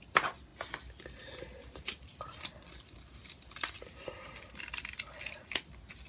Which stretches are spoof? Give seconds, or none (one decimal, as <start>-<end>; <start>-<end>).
none